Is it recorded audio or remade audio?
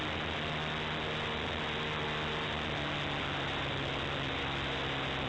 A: recorded